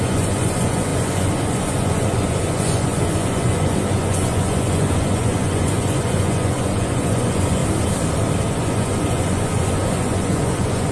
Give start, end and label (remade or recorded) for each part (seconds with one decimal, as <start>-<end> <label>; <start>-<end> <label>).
0.0-7.6 remade; 7.6-8.5 recorded; 8.5-10.9 remade